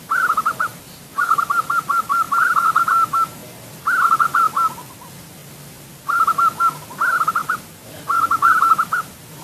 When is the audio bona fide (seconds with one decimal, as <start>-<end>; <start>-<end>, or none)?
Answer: 1.1-2.3; 3.4-7.3